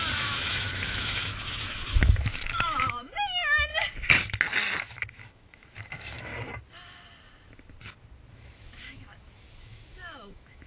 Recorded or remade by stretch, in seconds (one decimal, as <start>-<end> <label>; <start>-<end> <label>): 0.0-3.7 remade; 3.7-4.8 recorded; 4.8-6.3 remade; 6.3-8.3 recorded; 8.3-10.7 remade